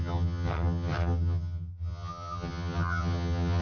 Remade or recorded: remade